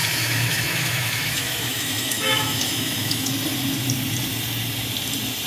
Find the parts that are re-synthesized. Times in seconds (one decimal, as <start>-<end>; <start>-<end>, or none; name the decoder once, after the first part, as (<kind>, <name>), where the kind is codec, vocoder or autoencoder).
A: 0.0-3.3 (autoencoder, DAC-VAE)